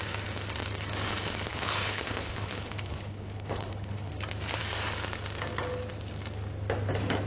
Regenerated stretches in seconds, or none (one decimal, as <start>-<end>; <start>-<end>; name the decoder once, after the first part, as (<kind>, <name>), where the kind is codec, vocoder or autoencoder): 1.5-4.1 (codec, HILCodec)